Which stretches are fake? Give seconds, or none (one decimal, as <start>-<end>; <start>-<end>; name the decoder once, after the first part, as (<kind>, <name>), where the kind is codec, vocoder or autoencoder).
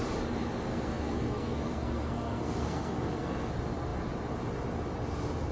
0.7-3.5 (codec, SNAC)